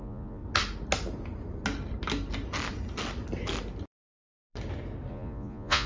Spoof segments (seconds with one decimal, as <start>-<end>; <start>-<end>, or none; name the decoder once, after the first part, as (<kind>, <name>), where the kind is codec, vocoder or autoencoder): 0.0-0.4 (vocoder, Vocos); 3.9-4.4; 5.1-5.9